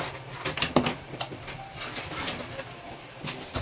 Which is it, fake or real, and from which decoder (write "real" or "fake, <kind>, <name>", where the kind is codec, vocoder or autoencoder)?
real